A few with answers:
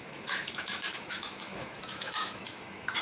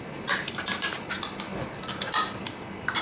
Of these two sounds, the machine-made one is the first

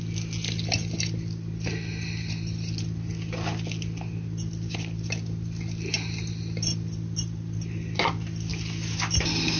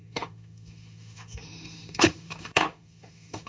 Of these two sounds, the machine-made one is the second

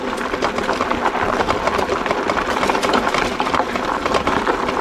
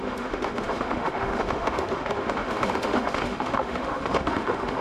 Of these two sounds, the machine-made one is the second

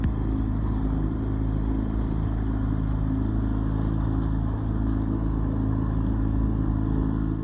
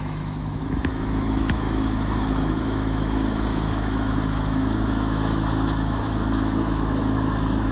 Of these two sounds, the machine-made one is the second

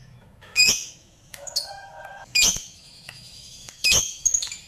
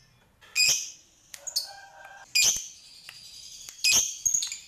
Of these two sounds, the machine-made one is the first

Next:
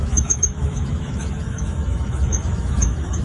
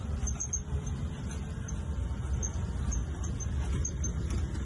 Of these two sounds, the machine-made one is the first